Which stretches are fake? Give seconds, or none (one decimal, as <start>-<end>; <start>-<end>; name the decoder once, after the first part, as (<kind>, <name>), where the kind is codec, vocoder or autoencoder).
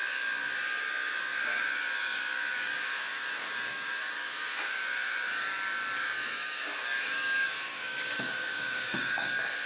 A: 0.0-9.7 (codec, DAC)